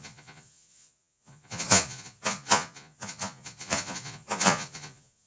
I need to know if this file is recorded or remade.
remade